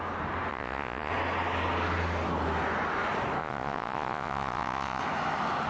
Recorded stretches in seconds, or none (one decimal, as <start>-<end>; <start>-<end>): 0.0-0.5; 1.1-3.4; 5.0-5.7